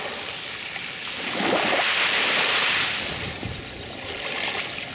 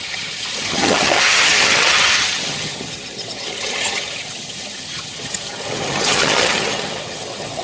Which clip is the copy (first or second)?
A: second